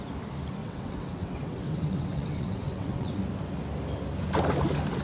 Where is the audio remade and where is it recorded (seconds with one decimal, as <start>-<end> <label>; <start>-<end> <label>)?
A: 0.0-0.6 recorded; 0.6-3.2 remade; 3.2-5.0 recorded